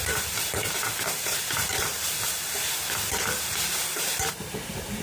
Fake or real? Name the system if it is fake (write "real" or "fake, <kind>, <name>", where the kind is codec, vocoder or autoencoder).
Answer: fake, vocoder, BigVGAN v2